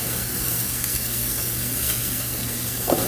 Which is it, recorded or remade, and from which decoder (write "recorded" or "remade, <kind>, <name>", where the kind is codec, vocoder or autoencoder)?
remade, codec, SNAC